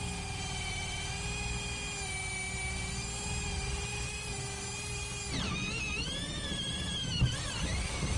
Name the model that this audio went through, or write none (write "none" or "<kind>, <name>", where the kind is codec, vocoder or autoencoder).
none